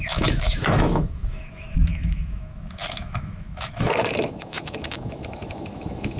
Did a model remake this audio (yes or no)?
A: yes